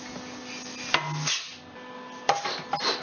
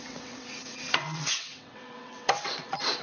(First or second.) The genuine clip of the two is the first